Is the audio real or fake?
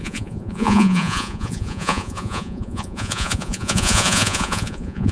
fake